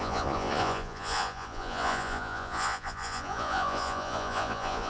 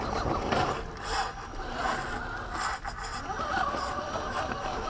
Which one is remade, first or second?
first